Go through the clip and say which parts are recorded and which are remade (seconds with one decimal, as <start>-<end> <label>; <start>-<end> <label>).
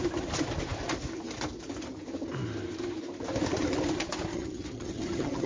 0.0-4.3 recorded; 4.3-5.5 remade